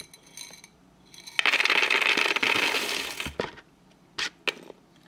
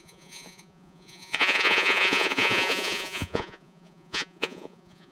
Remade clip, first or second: second